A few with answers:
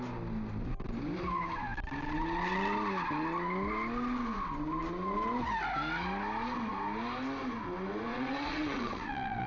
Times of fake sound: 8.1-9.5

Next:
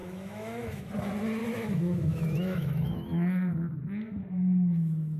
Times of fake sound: 0.0-0.9; 1.4-3.5

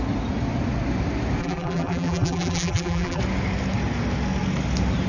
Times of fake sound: 1.4-3.2

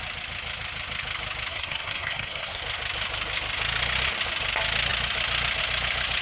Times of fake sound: 1.5-2.6

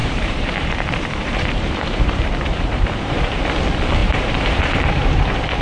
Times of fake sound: 0.0-3.4; 4.0-5.6

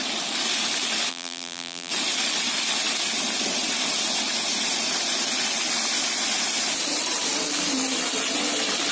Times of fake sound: 1.1-1.9

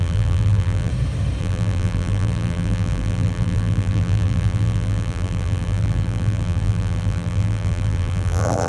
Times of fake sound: 0.0-0.9; 1.4-8.7